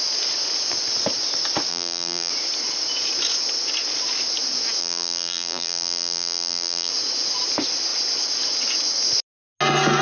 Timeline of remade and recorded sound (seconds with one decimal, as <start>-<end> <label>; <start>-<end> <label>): 0.0-1.7 recorded; 1.7-2.3 remade; 2.3-4.8 recorded; 4.8-6.9 remade; 6.9-10.0 recorded